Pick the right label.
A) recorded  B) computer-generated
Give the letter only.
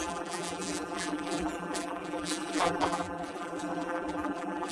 B